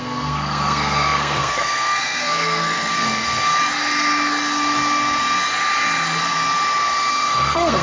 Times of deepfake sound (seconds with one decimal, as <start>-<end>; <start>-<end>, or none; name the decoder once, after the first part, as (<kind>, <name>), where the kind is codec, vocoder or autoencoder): 0.0-3.5 (codec, SNAC); 7.1-7.8